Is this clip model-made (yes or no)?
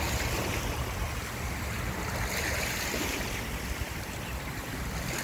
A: yes